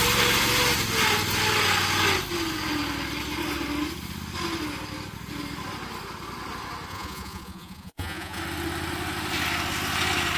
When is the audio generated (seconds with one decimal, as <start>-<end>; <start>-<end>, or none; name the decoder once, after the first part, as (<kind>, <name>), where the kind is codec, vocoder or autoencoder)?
6.9-8.4 (vocoder, Vocos)